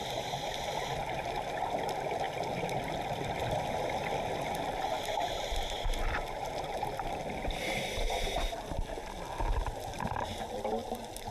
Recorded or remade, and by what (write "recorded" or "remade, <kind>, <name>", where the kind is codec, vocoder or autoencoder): recorded